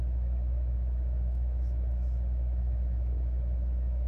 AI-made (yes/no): yes